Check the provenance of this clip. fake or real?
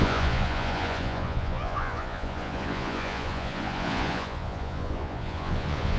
fake